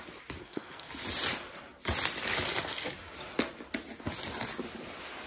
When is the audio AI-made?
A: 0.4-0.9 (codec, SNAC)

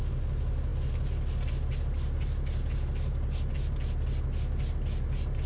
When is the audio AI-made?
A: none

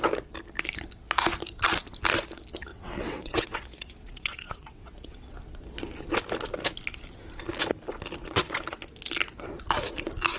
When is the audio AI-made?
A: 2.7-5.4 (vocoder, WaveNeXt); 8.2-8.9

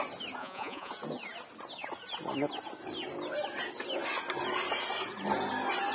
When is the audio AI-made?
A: 0.4-0.9 (vocoder, Vocos)